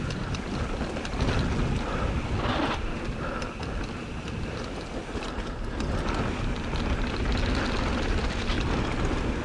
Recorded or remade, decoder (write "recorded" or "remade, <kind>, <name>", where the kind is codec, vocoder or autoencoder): recorded